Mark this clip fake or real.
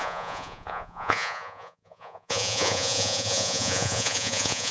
fake